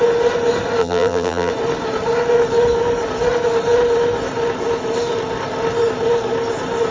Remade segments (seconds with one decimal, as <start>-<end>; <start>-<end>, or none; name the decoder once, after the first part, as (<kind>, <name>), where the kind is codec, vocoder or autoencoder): 0.8-1.5 (vocoder, BigVGAN v2)